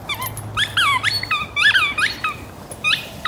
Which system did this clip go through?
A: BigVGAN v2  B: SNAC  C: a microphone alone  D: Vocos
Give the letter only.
C